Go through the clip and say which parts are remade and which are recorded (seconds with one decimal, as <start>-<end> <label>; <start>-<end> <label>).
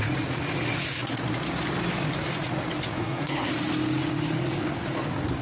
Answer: 0.0-3.0 recorded; 3.0-3.5 remade; 3.5-5.4 recorded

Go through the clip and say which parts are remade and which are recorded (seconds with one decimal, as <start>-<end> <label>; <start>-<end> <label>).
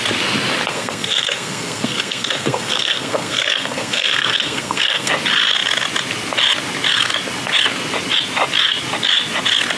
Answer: 0.0-0.7 recorded; 0.7-5.1 remade; 5.1-9.8 recorded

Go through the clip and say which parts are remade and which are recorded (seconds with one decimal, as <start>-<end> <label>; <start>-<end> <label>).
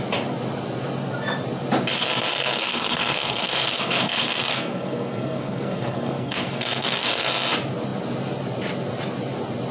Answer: 0.0-2.3 recorded; 2.3-7.3 remade; 7.3-9.7 recorded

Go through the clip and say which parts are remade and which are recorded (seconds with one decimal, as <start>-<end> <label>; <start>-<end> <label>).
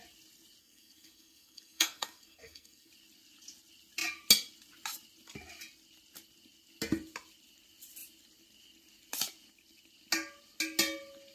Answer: 0.0-0.6 recorded; 0.6-2.9 remade; 2.9-11.3 recorded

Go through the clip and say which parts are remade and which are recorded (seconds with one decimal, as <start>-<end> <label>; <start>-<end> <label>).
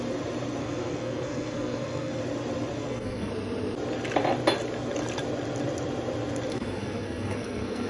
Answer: 0.0-0.6 recorded; 0.6-2.2 remade; 2.2-2.8 recorded; 2.8-3.3 remade; 3.3-6.5 recorded; 6.5-7.9 remade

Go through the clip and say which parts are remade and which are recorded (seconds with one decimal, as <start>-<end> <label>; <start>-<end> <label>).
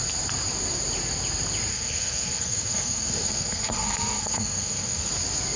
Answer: 0.0-1.7 recorded; 1.7-5.1 remade; 5.1-5.6 recorded